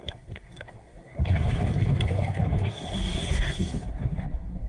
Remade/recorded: remade